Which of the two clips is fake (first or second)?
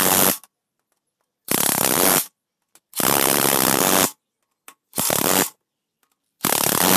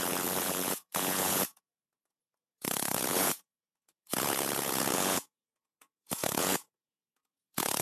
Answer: second